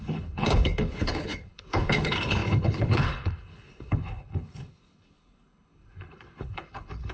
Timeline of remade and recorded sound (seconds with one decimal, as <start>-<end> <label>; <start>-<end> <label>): 0.0-7.1 remade